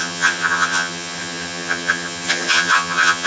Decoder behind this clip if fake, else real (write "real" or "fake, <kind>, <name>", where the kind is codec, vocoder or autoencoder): fake, vocoder, HiFi-GAN